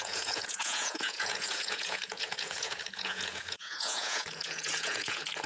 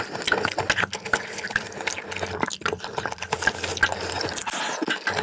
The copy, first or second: first